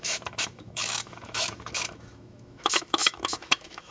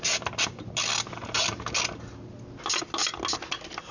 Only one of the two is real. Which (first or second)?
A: second